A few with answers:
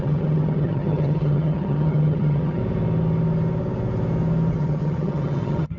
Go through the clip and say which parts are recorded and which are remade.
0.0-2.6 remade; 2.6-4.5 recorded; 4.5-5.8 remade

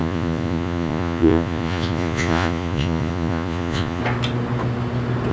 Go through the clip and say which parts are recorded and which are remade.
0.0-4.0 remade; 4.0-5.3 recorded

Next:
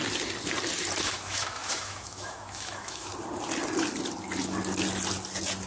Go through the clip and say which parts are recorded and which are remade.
0.0-1.0 recorded; 1.0-3.1 remade; 3.1-5.7 recorded